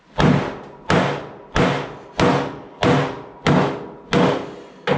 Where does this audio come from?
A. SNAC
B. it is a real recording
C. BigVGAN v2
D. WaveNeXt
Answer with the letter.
B